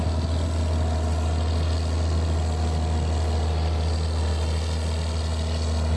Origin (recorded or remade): recorded